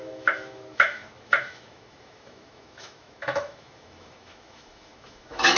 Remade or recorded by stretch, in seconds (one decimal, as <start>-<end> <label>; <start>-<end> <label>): 0.0-5.6 remade

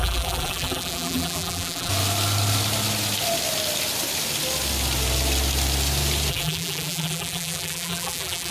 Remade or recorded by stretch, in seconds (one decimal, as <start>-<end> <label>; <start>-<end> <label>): 0.0-1.9 remade; 1.9-6.3 recorded; 6.3-8.5 remade

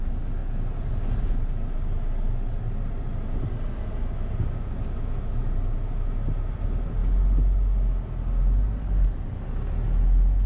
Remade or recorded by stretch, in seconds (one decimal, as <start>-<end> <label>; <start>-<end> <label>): 0.0-10.5 recorded